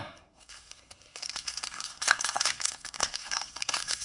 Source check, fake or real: fake